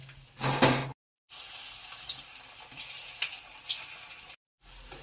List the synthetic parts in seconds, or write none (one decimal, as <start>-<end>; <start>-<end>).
none